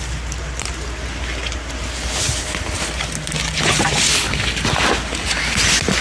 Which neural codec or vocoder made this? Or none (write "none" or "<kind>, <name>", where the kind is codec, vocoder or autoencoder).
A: none